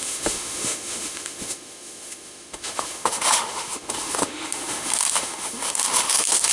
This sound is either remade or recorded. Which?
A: remade